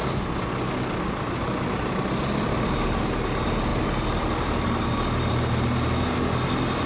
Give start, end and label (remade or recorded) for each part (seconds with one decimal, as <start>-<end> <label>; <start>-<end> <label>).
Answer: 0.0-6.9 recorded